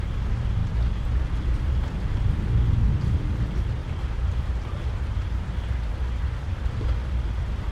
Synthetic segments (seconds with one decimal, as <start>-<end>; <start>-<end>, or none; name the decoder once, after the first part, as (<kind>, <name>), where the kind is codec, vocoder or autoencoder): 3.8-5.4 (vocoder, BigVGAN v2)